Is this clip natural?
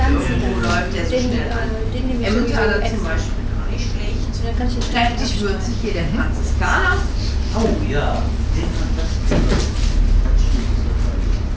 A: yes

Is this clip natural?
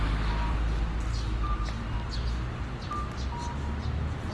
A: yes